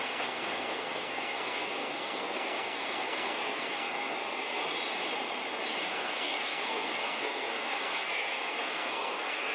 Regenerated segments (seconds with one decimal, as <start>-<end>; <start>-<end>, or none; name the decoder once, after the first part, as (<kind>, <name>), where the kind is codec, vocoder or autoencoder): 0.0-4.6 (codec, SNAC); 5.8-9.5